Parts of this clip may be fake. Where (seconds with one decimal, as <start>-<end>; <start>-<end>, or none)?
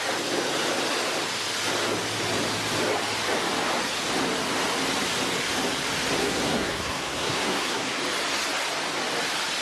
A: 6.2-8.0